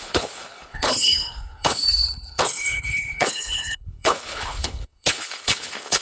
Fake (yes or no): yes